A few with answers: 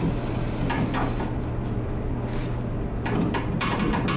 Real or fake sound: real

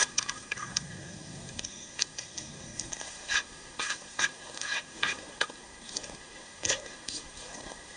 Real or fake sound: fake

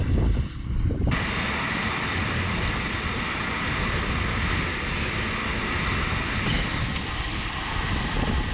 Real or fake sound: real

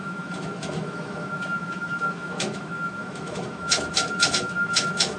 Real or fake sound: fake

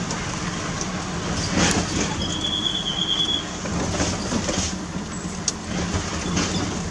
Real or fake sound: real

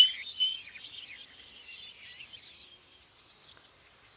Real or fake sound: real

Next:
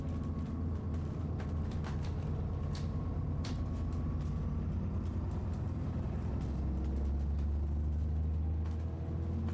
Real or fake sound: real